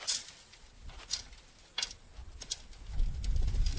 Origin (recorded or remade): recorded